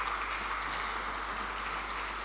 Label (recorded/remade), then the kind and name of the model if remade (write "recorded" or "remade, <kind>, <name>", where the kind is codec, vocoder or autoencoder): recorded